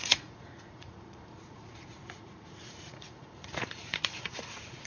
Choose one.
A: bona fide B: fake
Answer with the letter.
B